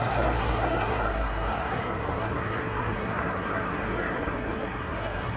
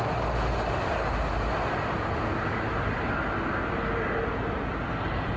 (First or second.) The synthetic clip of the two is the first